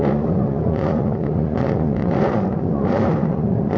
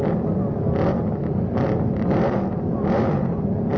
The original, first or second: second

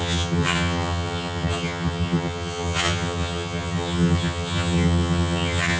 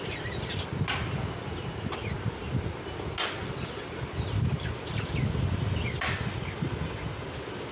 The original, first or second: second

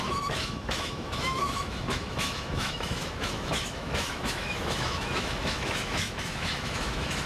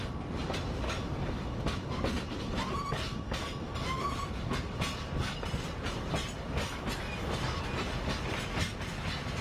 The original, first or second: second